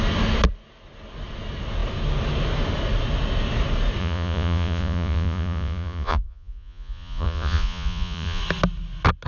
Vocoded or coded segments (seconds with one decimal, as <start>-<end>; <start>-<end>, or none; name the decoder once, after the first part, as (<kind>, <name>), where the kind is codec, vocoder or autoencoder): 4.0-8.4 (vocoder, Vocos)